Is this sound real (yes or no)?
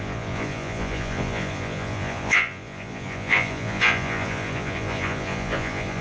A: no